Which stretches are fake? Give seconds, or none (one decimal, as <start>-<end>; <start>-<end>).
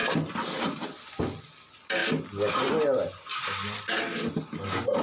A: none